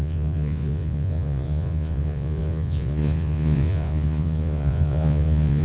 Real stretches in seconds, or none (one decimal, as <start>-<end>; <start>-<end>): none